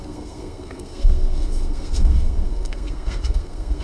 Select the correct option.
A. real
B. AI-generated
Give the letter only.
B